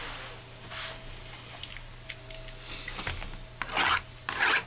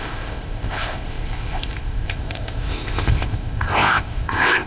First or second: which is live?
first